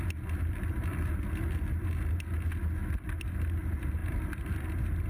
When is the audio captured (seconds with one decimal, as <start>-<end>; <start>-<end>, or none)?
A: 0.0-5.1